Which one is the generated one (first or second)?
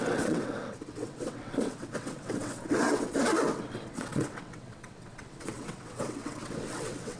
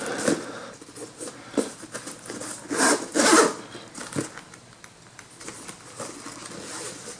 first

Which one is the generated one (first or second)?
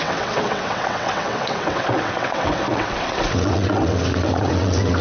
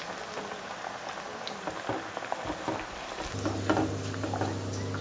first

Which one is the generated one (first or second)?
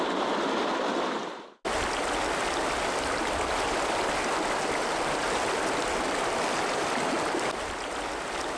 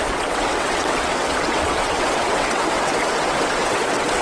second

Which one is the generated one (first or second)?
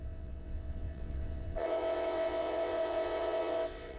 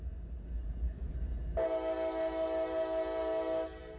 first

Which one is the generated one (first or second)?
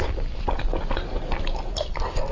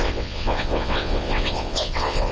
second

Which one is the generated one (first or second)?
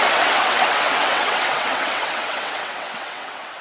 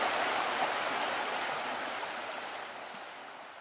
first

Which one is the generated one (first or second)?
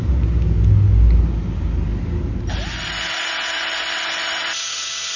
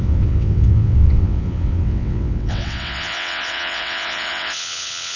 second